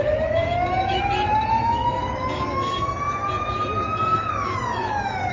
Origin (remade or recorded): remade